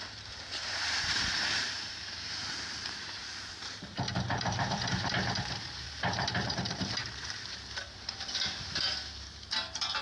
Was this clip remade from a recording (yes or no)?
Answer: yes